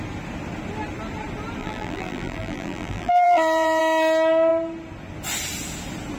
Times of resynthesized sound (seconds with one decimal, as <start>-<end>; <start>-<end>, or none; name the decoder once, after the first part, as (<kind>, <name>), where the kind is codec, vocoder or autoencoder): 1.6-3.8 (vocoder, BigVGAN v2)